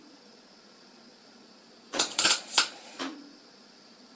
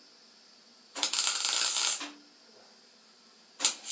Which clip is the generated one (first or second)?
first